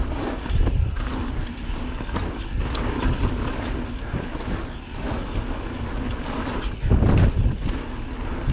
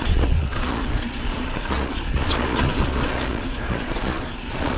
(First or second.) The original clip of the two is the first